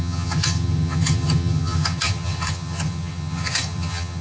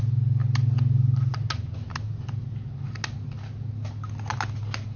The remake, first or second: first